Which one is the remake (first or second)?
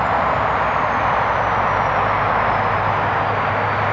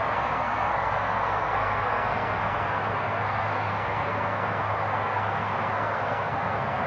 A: second